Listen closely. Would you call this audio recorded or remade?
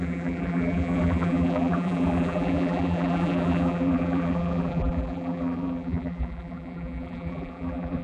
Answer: remade